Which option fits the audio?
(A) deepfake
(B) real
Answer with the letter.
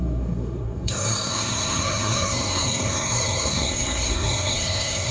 A